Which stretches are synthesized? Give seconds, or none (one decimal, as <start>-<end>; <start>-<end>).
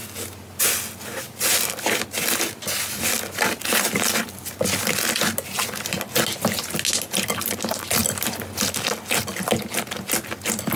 none